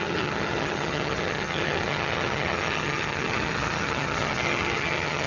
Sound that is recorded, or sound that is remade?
remade